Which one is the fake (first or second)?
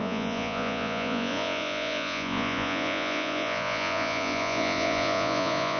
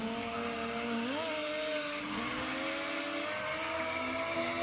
first